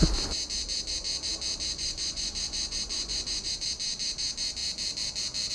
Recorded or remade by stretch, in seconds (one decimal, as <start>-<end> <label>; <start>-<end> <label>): 0.0-1.7 recorded; 1.7-3.5 remade; 3.5-5.5 recorded